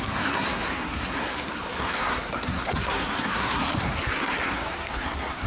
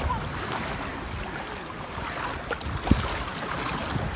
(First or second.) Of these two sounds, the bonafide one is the second